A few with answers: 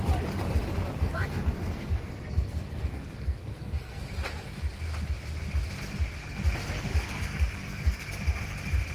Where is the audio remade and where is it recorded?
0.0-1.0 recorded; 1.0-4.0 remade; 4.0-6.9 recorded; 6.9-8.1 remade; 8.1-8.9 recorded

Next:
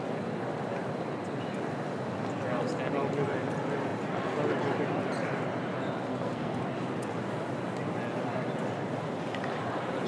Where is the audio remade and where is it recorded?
0.0-6.1 recorded; 6.1-6.6 remade; 6.6-10.1 recorded

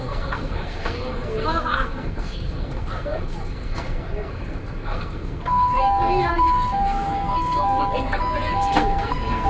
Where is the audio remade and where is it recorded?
0.0-9.5 remade

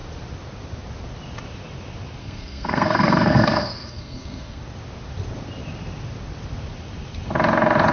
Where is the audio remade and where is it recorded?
0.0-2.2 recorded; 2.2-4.6 remade; 4.6-7.9 recorded